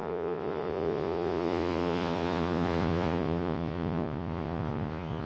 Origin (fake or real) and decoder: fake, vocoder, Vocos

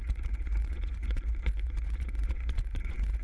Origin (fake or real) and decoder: fake, vocoder, Vocos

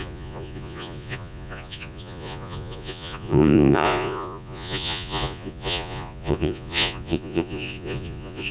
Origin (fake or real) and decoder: fake, vocoder, Vocos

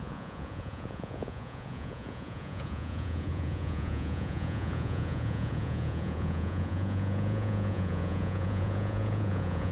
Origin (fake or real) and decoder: fake, vocoder, Vocos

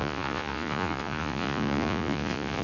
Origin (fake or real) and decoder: fake, vocoder, Vocos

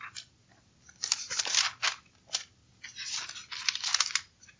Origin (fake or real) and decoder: real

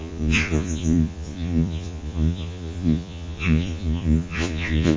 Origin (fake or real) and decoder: fake, vocoder, Vocos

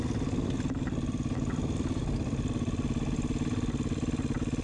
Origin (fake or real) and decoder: real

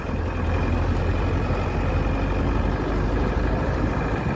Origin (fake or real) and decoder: real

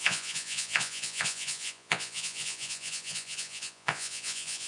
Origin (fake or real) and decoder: fake, vocoder, Vocos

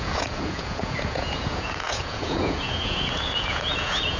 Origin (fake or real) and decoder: fake, vocoder, Vocos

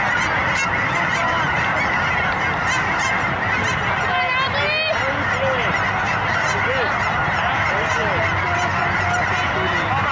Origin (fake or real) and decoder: real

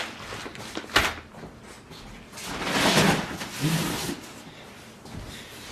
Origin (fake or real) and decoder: real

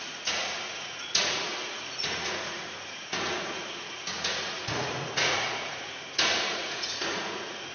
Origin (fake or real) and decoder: fake, vocoder, Vocos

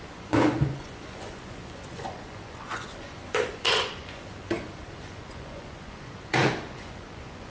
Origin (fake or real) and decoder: fake, vocoder, Vocos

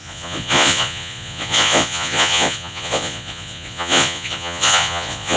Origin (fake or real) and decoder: fake, vocoder, Vocos